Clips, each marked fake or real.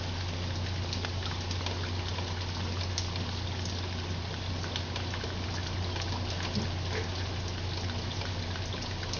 real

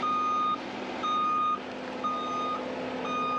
real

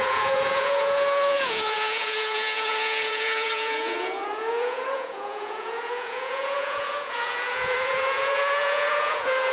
fake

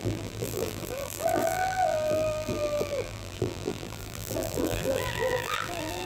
fake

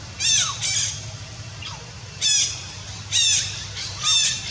real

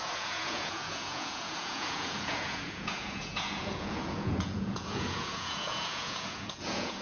fake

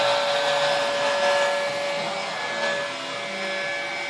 real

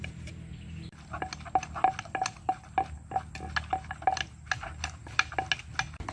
real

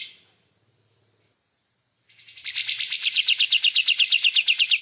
real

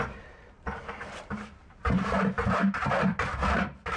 fake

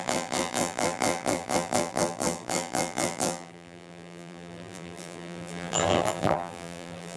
fake